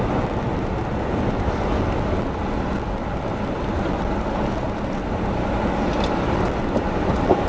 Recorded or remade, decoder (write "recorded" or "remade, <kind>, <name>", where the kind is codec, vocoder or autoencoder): recorded